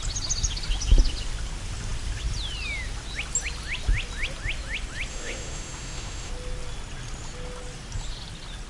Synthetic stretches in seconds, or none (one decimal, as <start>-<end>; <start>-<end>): 5.1-6.3